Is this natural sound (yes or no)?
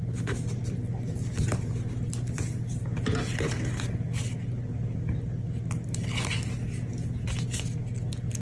yes